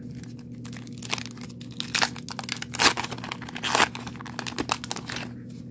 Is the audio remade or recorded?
recorded